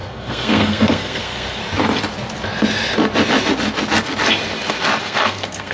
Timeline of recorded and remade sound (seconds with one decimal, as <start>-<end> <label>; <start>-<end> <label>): 0.0-1.6 remade; 1.6-5.0 recorded; 5.0-5.7 remade

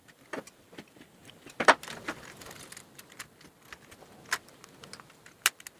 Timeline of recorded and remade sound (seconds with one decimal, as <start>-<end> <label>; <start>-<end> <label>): 0.0-1.2 recorded; 1.2-2.8 remade; 2.8-5.8 recorded